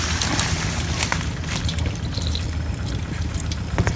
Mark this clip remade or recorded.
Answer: recorded